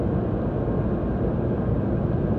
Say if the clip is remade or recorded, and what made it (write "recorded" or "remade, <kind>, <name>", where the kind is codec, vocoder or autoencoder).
recorded